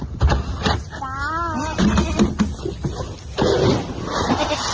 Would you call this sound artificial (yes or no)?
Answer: no